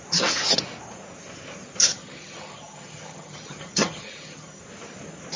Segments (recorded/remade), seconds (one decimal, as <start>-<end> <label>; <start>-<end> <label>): 0.0-1.9 recorded; 1.9-4.6 remade; 4.6-5.4 recorded